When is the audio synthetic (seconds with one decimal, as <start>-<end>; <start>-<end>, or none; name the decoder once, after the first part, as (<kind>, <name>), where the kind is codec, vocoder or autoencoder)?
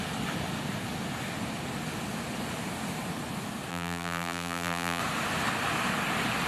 3.7-5.0 (vocoder, BigVGAN v2)